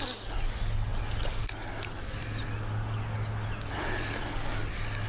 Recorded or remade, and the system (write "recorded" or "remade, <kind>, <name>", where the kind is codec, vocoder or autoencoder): recorded